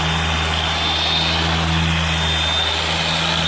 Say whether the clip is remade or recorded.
recorded